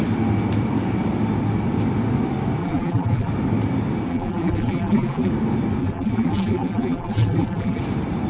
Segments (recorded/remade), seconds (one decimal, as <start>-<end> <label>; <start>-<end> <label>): 0.0-2.6 recorded; 2.6-3.3 remade; 3.3-4.1 recorded; 4.1-5.3 remade; 5.3-5.8 recorded; 5.8-7.8 remade; 7.8-8.3 recorded